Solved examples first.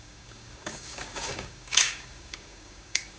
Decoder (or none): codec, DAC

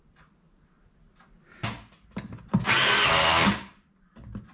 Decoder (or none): none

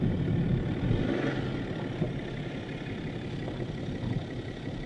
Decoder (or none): none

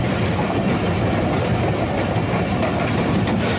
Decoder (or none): none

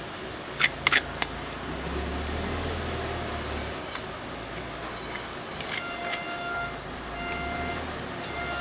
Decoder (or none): none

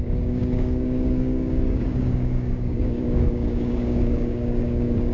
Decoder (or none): codec, DAC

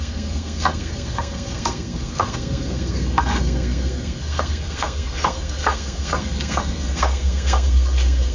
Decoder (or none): codec, SNAC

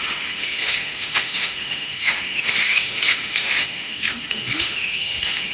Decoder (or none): autoencoder, DAC-VAE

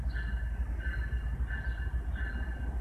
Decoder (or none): none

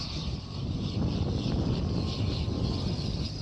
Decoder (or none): none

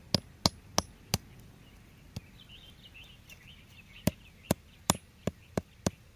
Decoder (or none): none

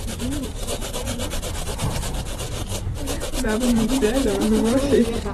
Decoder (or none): vocoder, BigVGAN v2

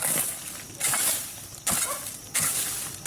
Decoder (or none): none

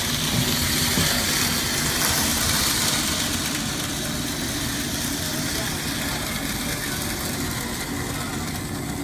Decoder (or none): none